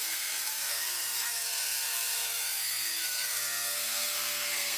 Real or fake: fake